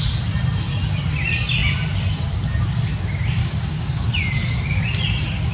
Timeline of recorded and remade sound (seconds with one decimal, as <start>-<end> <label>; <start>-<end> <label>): 0.0-3.4 recorded; 3.4-4.1 remade; 4.1-5.5 recorded